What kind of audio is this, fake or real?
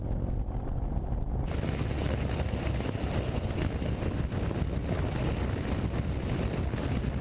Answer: real